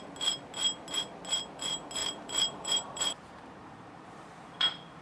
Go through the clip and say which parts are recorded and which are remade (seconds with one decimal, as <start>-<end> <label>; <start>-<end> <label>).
0.0-2.0 recorded; 2.0-5.0 remade